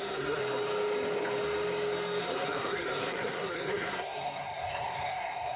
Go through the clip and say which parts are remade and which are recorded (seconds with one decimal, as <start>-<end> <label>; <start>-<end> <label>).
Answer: 0.0-0.4 remade; 0.4-2.2 recorded; 2.2-5.6 remade